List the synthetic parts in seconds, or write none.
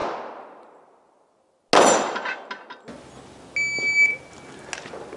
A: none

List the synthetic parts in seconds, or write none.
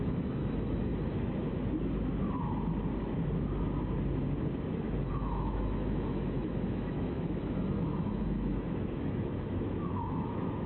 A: 0.0-0.9; 5.1-10.7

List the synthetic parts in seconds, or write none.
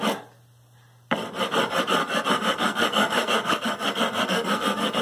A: 2.0-5.0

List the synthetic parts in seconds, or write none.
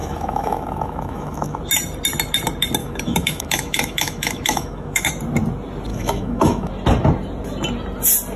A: 0.0-1.6; 2.8-5.1; 5.9-6.7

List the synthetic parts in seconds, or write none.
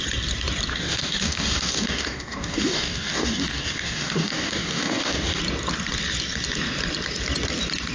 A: 0.7-5.4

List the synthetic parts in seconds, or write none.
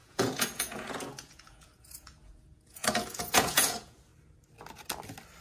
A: 0.0-4.1